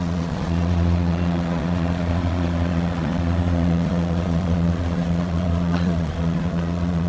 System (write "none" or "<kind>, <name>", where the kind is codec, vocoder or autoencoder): vocoder, Vocos